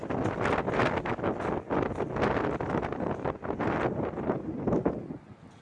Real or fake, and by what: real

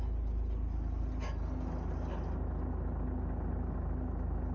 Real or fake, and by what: real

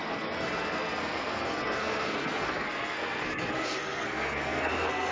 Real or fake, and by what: fake, codec, SNAC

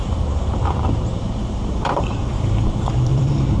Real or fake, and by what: fake, vocoder, BigVGAN v2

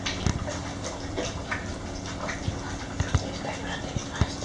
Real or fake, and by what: real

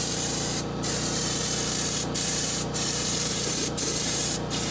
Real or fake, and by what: fake, vocoder, BigVGAN v2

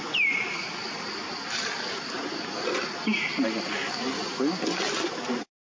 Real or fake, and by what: real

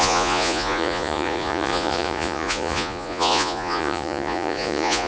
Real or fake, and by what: fake, vocoder, Vocos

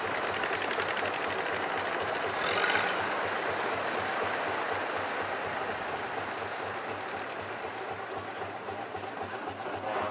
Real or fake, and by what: real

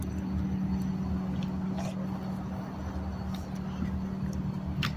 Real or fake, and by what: real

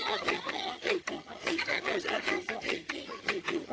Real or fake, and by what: fake, vocoder, HiFi-GAN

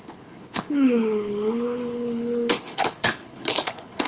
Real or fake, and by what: fake, codec, HILCodec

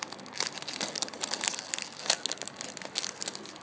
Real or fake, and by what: real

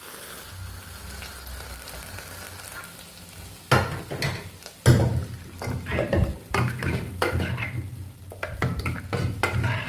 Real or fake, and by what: real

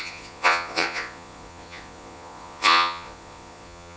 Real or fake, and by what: fake, vocoder, Vocos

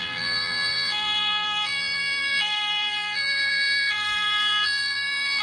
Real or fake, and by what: fake, vocoder, BigVGAN v2